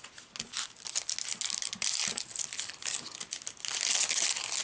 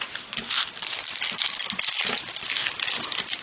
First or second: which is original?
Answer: first